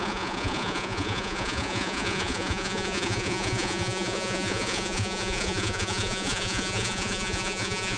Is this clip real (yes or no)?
no